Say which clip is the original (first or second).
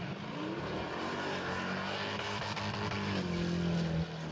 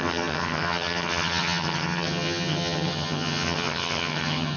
first